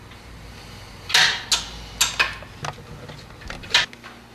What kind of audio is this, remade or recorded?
recorded